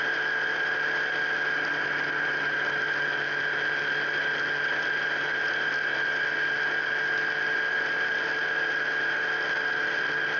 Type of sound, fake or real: real